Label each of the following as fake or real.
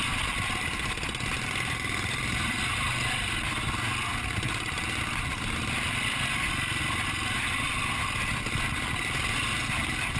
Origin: real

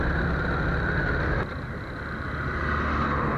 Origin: real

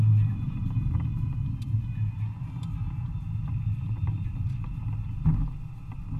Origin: real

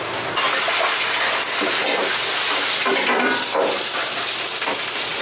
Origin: real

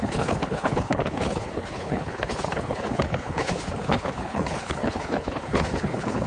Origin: fake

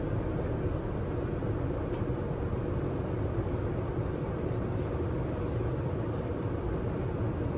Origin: real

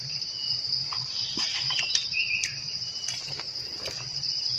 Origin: fake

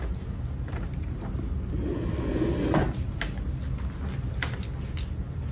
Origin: real